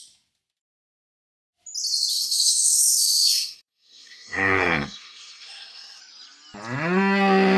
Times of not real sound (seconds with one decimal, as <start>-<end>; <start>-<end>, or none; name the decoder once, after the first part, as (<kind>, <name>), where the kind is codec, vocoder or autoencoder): 2.1-6.0 (codec, SNAC)